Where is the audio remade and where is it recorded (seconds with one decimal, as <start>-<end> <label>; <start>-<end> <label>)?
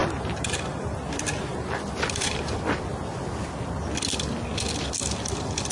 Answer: 0.0-1.0 remade; 1.0-1.5 recorded; 1.5-2.4 remade; 2.4-5.7 recorded